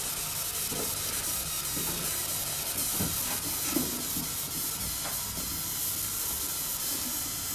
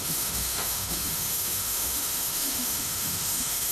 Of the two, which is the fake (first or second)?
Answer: second